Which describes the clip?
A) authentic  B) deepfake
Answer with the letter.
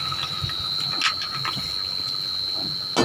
A